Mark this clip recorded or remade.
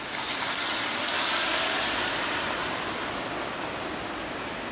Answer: recorded